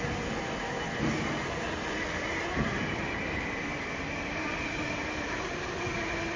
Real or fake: real